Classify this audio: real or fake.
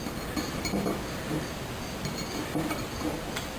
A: real